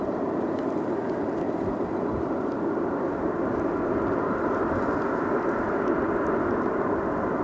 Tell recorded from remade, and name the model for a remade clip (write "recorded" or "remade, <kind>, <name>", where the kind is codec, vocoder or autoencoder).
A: recorded